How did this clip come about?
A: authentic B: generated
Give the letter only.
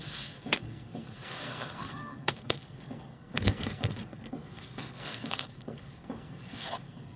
B